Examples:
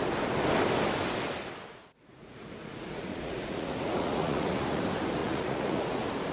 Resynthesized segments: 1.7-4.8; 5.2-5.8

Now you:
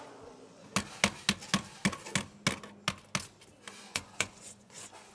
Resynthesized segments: 0.0-0.7; 3.8-5.1

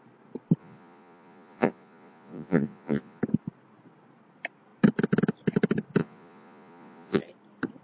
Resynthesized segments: 0.6-3.2; 6.0-7.2

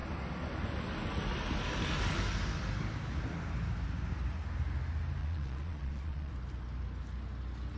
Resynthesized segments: 5.2-6.3